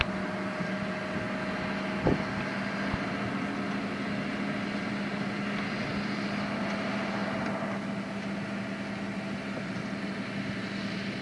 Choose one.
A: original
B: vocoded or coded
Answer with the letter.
A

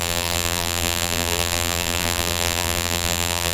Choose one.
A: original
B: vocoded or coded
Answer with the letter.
B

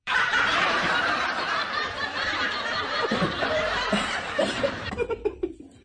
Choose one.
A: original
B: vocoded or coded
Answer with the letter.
B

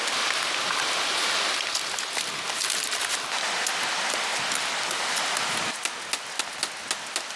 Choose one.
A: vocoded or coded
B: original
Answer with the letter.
B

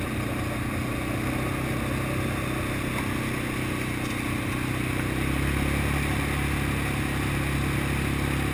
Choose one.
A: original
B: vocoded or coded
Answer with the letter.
A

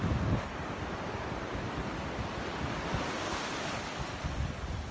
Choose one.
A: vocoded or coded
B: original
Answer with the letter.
B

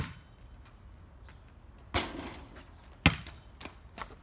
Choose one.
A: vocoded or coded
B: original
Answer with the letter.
B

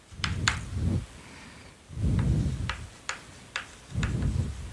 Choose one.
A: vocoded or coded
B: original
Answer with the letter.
A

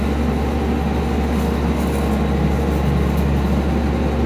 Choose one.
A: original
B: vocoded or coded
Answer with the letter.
A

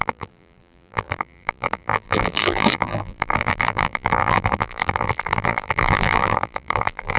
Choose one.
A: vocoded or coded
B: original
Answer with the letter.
A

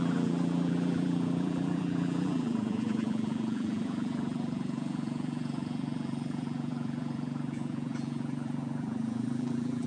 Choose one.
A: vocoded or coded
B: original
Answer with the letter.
A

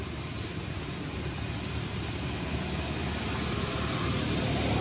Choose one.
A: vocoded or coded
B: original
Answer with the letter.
B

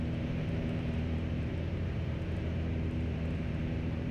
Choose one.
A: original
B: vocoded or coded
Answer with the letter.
B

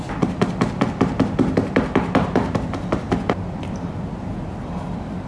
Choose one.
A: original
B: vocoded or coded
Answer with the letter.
B